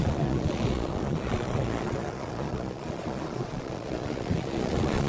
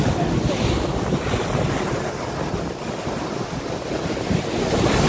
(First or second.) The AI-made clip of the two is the first